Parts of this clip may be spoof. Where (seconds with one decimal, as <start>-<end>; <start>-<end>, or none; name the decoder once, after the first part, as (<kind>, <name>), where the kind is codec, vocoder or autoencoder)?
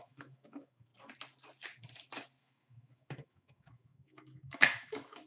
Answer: 0.0-0.9 (autoencoder, DAC-VAE); 2.4-5.3